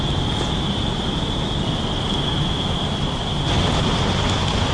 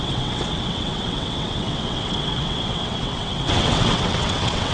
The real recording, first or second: first